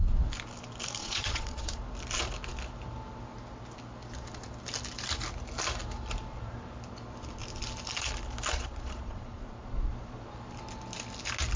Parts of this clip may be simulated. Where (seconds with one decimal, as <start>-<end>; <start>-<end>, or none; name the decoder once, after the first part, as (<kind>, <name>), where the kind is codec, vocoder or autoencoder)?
1.0-1.8 (vocoder, Vocos); 8.5-9.9